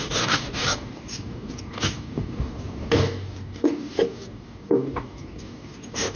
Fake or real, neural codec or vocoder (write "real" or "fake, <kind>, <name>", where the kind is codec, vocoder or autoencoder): fake, codec, DAC